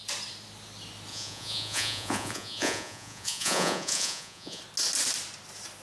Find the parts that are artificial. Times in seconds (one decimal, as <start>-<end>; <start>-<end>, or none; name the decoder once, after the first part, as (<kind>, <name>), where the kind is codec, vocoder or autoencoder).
1.1-4.6 (vocoder, Vocos)